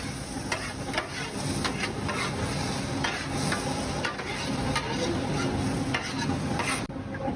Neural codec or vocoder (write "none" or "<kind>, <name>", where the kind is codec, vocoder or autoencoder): none